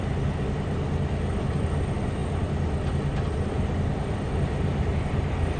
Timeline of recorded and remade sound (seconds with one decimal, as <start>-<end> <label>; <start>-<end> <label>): 0.0-5.6 recorded